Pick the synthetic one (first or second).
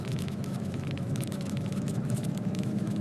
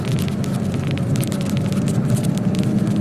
first